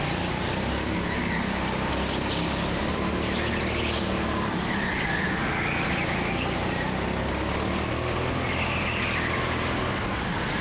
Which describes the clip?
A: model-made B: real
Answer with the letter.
B